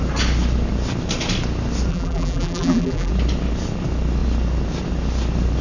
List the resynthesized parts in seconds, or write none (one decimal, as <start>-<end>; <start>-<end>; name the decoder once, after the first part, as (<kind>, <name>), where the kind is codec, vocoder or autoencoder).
1.9-3.1 (vocoder, BigVGAN v2)